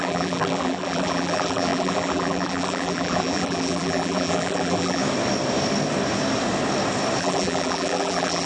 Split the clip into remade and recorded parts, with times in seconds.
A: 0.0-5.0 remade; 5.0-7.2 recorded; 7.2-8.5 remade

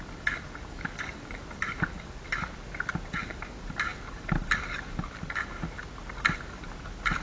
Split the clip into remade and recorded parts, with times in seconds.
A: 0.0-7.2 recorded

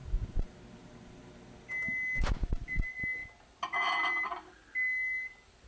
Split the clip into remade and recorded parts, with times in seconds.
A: 0.0-5.7 recorded

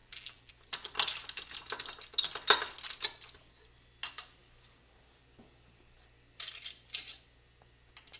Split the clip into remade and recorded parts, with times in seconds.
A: 0.0-0.5 remade; 0.5-8.2 recorded